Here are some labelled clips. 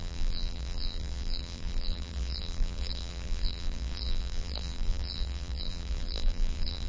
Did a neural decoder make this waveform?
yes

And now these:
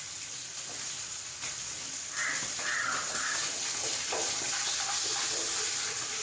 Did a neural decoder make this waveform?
no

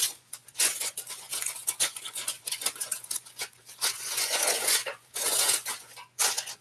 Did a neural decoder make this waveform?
yes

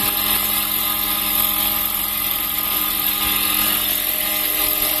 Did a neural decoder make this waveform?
no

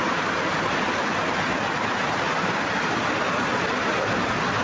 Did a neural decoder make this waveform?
no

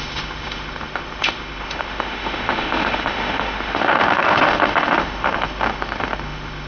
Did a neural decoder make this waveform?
yes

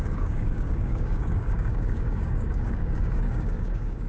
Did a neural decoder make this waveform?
yes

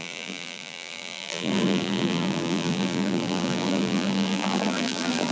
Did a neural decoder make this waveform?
yes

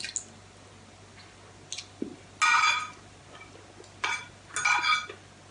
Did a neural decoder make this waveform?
no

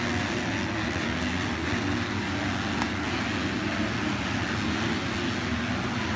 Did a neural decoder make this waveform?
no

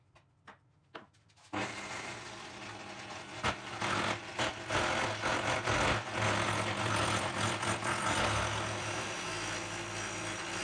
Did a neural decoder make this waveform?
no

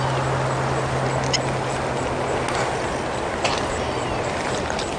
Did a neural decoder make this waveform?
no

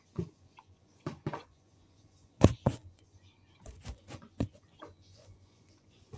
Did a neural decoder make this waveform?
yes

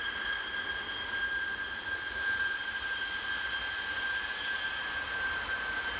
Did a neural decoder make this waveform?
yes